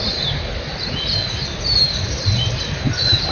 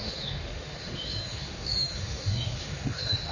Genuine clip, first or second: first